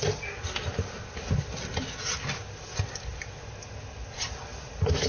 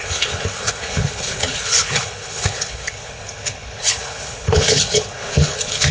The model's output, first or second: second